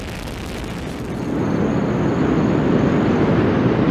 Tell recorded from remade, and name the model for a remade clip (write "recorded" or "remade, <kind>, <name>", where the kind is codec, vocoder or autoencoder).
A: recorded